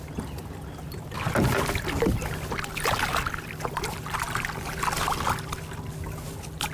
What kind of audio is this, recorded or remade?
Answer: recorded